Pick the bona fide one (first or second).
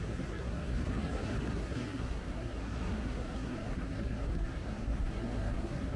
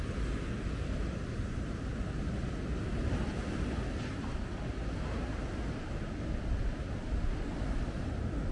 second